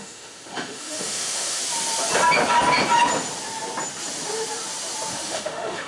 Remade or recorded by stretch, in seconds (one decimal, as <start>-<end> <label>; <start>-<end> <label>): 0.0-1.6 remade; 1.6-5.1 recorded; 5.1-5.9 remade